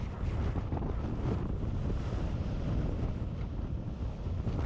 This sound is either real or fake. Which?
real